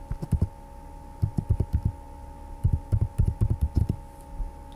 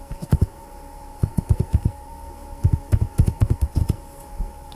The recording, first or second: first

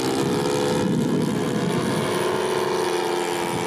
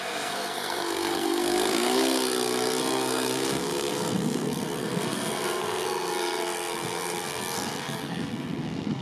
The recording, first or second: first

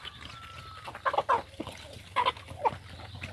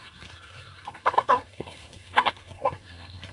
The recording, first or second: first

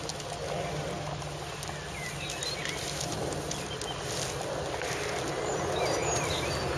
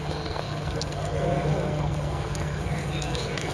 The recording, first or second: first